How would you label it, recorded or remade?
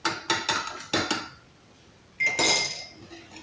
recorded